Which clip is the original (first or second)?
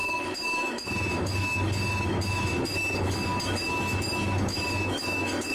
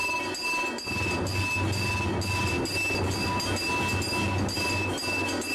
second